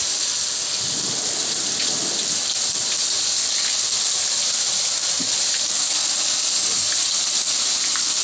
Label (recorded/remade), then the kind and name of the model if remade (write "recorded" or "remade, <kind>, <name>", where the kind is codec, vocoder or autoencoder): recorded